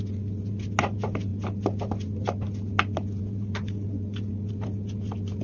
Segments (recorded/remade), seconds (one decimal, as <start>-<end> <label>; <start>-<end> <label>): 0.0-5.4 recorded